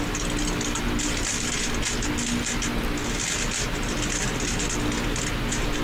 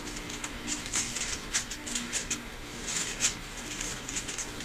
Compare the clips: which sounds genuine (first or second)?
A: first